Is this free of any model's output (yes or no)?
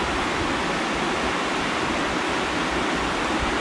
yes